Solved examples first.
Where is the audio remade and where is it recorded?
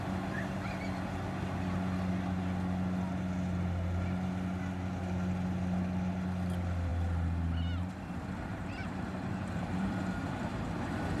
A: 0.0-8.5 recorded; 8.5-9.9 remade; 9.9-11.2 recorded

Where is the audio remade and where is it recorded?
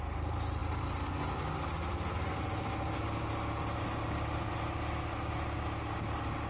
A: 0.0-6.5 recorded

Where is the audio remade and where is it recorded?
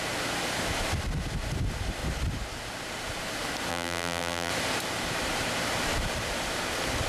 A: 0.0-3.7 recorded; 3.7-4.5 remade; 4.5-7.1 recorded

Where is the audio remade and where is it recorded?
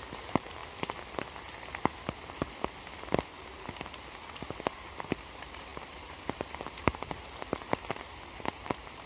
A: 0.0-0.6 remade; 0.6-4.6 recorded; 4.6-9.1 remade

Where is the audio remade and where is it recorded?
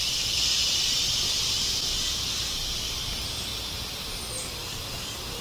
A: 0.0-3.5 remade; 3.5-4.1 recorded; 4.1-5.4 remade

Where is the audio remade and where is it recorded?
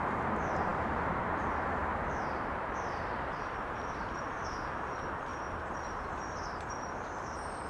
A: 0.0-5.3 remade; 5.3-5.9 recorded; 5.9-7.7 remade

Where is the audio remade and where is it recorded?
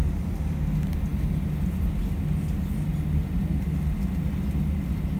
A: 0.0-5.2 recorded